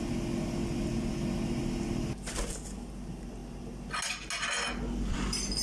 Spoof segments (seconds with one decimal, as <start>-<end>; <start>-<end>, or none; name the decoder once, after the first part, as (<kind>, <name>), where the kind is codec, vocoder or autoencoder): none